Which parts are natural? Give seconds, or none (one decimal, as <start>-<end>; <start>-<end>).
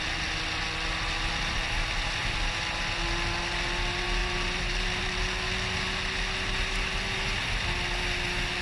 0.0-4.2; 5.2-8.6